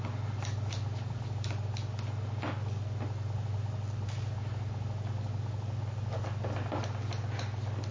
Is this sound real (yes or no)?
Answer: yes